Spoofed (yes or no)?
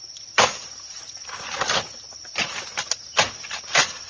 no